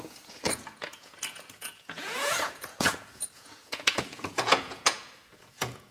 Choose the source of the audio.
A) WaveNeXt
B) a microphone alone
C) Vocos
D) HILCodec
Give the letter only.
C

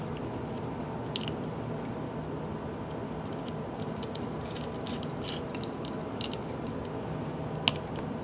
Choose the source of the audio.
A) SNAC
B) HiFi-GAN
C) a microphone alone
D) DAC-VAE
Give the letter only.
C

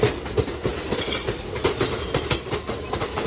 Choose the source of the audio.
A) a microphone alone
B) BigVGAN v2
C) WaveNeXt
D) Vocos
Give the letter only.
A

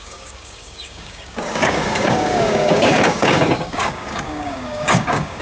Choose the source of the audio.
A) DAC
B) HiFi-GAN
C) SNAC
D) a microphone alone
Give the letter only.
A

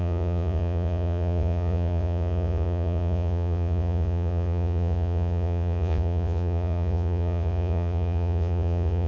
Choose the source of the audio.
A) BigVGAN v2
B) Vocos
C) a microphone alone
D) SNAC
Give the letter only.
B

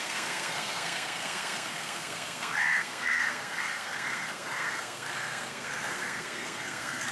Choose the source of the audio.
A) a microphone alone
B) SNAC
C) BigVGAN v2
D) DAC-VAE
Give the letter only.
B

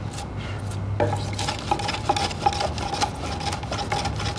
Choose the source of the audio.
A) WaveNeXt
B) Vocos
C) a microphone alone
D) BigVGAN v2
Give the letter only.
C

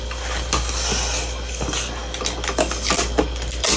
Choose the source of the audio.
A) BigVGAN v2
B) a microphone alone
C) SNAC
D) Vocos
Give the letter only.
B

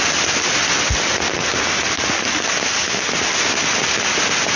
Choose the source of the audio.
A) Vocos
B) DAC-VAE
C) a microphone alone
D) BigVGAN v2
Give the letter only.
C